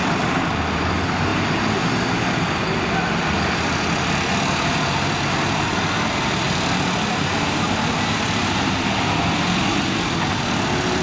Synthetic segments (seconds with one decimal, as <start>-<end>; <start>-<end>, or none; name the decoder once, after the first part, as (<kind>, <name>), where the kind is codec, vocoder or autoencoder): none